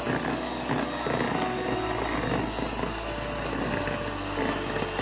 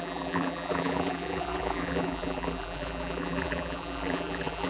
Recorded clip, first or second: first